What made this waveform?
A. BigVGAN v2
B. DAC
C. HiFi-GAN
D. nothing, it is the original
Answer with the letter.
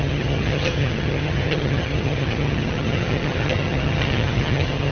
C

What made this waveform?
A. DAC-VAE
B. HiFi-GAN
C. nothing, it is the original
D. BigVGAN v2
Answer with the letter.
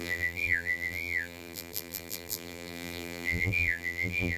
D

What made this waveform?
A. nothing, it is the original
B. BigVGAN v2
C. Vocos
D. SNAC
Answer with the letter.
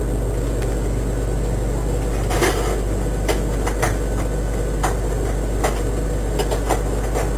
A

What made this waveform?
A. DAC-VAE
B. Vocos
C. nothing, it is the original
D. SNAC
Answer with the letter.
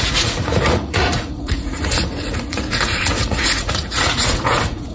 B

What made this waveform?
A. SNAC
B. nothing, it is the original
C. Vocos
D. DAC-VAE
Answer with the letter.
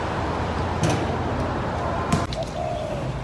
B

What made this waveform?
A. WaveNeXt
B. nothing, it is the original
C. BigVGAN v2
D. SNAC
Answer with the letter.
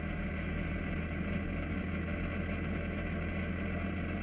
B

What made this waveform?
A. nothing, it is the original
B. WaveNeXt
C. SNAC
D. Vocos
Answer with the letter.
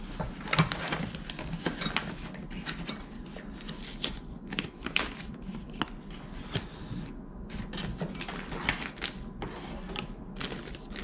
A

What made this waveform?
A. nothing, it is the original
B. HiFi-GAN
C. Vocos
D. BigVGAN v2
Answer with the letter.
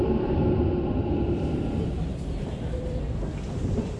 D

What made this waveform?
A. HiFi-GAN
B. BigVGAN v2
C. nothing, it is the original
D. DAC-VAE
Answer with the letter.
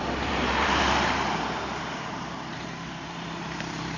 B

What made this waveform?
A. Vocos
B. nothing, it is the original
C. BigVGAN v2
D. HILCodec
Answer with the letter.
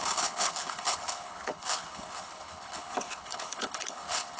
D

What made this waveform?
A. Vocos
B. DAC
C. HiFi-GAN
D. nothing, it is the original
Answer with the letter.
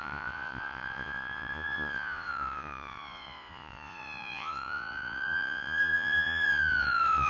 A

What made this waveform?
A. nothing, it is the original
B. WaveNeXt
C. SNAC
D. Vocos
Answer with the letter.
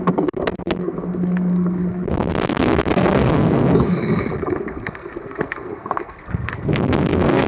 C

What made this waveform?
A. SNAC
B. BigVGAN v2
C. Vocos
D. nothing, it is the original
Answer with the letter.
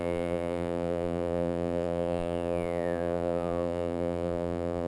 B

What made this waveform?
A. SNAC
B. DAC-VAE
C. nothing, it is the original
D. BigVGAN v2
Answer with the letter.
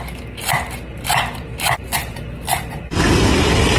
C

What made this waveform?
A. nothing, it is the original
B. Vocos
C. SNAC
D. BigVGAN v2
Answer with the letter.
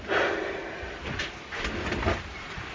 A